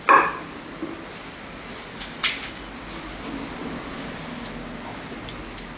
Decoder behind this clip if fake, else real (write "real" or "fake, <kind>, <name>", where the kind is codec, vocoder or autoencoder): real